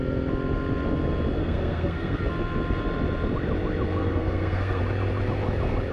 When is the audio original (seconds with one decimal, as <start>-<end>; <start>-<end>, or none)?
0.0-1.4; 2.2-4.0; 4.8-5.9